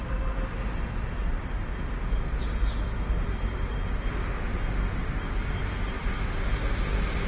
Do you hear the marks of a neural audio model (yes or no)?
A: no